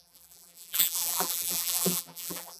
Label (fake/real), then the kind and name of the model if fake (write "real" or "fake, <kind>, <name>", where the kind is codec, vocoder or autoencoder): fake, vocoder, BigVGAN v2